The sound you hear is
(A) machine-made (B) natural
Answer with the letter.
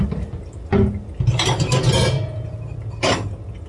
B